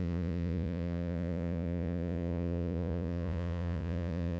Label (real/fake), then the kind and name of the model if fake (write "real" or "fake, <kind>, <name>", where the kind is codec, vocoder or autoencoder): fake, vocoder, Vocos